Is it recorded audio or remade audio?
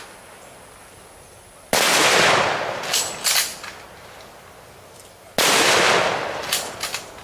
recorded